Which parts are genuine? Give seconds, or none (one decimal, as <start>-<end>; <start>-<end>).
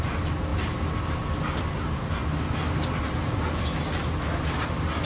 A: 0.0-5.0